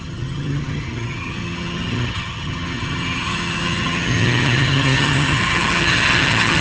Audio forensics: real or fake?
fake